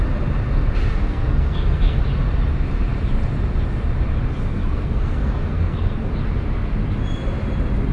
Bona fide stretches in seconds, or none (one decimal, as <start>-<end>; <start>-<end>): 0.0-1.0; 2.0-4.5; 6.1-7.9